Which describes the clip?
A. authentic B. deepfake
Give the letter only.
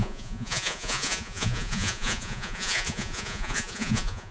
B